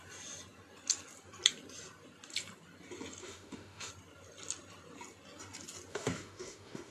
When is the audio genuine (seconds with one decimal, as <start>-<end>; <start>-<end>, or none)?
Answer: 0.0-3.2; 3.9-5.9